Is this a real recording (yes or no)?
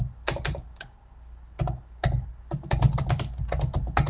yes